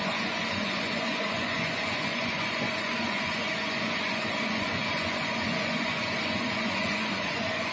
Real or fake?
fake